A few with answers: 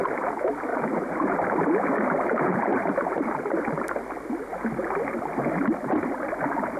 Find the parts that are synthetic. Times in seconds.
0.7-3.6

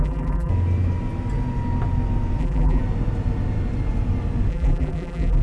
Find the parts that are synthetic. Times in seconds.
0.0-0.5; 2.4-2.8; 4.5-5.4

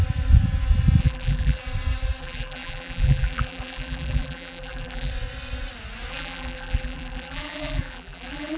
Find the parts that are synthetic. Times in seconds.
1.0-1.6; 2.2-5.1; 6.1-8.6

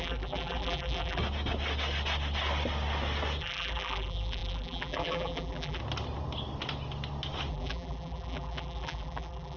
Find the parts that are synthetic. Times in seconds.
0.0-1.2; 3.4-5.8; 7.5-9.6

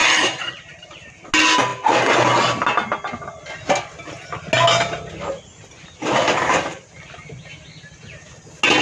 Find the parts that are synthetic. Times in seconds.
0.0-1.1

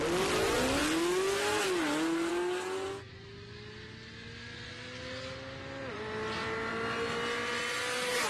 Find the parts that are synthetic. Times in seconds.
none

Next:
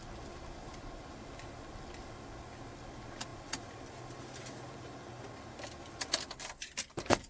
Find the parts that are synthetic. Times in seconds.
none